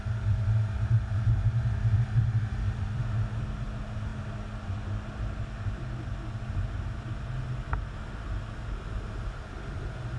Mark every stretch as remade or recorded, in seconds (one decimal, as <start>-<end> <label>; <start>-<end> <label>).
0.0-10.2 recorded